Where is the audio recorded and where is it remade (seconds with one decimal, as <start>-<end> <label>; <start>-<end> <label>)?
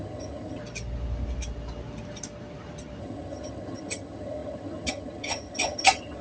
0.0-0.6 remade; 0.6-3.0 recorded; 3.0-6.2 remade